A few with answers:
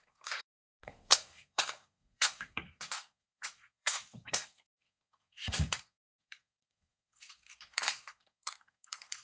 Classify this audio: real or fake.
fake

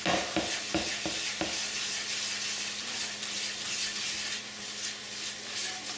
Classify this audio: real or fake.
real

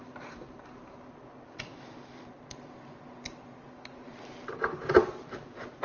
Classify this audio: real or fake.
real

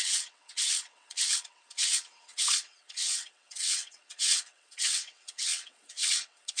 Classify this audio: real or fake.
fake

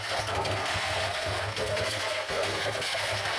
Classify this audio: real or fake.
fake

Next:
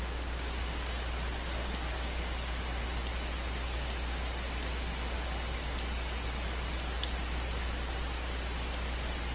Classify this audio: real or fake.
real